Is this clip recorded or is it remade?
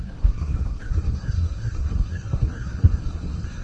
remade